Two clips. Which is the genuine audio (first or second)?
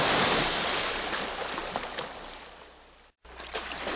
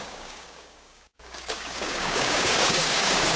first